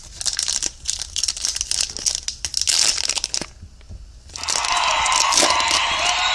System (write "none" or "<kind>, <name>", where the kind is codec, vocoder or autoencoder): none